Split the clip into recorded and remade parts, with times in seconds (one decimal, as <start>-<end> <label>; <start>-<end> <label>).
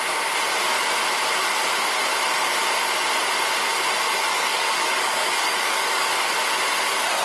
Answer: 0.0-4.3 recorded; 4.3-6.3 remade; 6.3-7.2 recorded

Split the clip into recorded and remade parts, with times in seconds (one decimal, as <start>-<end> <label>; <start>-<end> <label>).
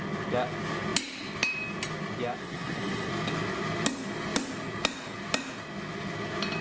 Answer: 0.0-2.4 recorded; 2.4-3.1 remade; 3.1-6.6 recorded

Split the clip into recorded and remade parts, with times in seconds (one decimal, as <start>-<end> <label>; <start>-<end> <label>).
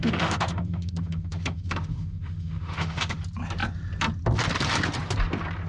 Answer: 0.0-3.2 remade; 3.2-5.7 recorded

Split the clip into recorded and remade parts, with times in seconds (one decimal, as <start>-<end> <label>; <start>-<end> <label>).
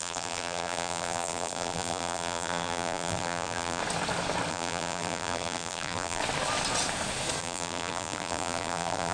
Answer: 0.0-3.8 remade; 3.8-4.5 recorded; 4.5-6.2 remade; 6.2-7.4 recorded; 7.4-9.1 remade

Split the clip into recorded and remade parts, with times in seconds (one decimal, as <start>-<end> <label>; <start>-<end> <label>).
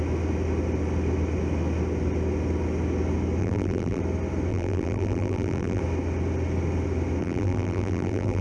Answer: 0.0-3.4 recorded; 3.4-4.0 remade; 4.0-4.5 recorded; 4.5-5.8 remade; 5.8-7.2 recorded; 7.2-8.4 remade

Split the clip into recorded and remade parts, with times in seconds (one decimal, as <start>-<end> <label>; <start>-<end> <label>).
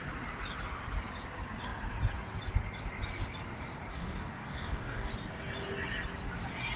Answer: 0.0-3.9 recorded; 3.9-5.1 remade; 5.1-6.8 recorded